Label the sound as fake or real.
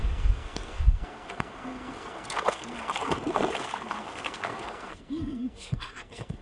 fake